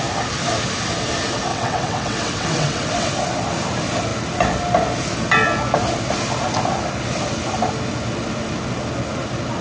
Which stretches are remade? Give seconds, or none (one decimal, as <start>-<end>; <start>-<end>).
1.5-3.1